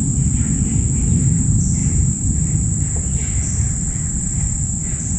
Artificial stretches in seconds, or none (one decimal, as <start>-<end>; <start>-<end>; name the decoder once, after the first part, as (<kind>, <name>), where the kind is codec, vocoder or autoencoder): none